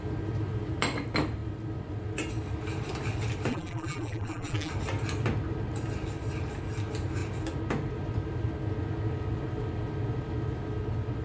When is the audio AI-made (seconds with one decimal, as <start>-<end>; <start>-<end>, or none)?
3.5-4.7